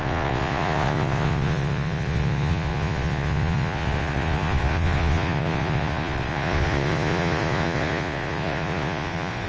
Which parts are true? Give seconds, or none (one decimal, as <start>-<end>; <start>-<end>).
none